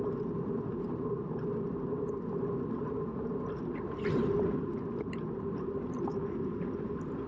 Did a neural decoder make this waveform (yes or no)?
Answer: no